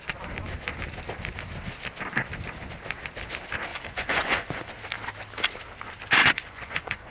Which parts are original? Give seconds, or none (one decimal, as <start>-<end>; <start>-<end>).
0.0-3.7; 4.7-6.2